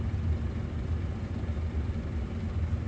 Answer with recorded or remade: recorded